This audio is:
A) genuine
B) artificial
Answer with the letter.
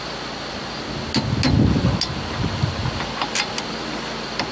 A